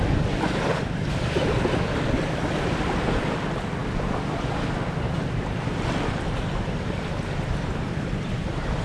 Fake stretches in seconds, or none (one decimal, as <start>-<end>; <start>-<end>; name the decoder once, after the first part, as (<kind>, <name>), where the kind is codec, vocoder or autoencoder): none